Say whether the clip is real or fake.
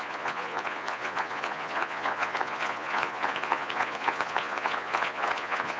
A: fake